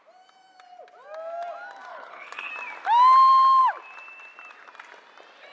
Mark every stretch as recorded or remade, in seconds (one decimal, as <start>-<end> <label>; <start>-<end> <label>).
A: 0.0-1.9 recorded; 1.9-2.5 remade; 2.5-5.5 recorded